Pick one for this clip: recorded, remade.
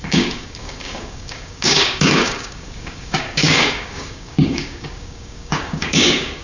remade